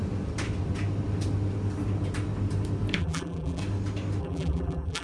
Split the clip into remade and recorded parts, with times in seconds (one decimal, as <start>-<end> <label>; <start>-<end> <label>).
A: 0.0-3.0 recorded; 3.0-3.6 remade; 3.6-4.2 recorded; 4.2-5.0 remade